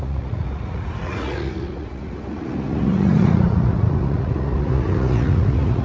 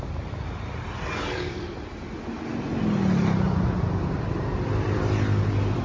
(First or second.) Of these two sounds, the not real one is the first